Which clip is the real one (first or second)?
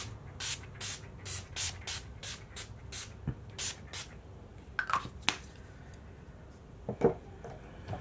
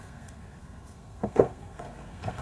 first